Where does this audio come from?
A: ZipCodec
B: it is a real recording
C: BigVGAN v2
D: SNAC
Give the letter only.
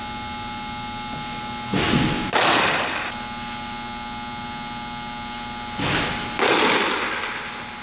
B